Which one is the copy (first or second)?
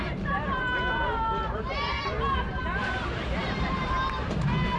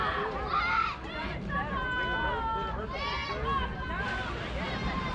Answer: first